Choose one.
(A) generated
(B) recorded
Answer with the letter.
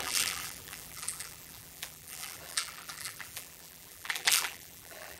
A